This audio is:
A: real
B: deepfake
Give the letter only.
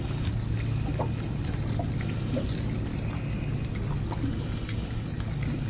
A